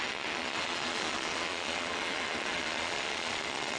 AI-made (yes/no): yes